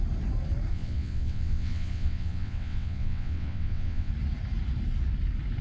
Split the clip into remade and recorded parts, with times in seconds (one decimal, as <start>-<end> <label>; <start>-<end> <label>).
0.0-0.7 recorded; 0.7-4.1 remade; 4.1-5.6 recorded